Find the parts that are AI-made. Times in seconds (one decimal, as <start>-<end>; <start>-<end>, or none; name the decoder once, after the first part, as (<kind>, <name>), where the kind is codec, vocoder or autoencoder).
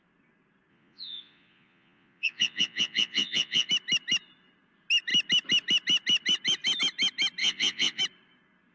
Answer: 0.7-3.7 (vocoder, Vocos); 7.4-8.0